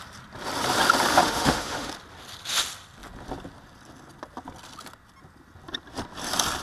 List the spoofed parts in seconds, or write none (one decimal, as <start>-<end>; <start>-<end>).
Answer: 1.1-1.9